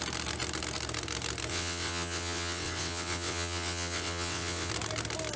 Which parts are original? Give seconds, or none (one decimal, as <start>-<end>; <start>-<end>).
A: 0.0-1.5; 4.7-5.4